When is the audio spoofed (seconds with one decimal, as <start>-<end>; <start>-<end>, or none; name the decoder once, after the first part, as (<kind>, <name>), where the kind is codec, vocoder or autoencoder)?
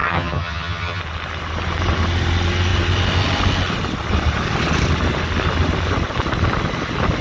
0.0-1.0 (vocoder, HiFi-GAN)